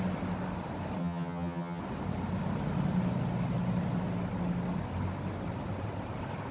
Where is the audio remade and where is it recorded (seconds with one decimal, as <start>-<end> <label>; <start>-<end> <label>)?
0.0-1.0 recorded; 1.0-1.8 remade; 1.8-6.5 recorded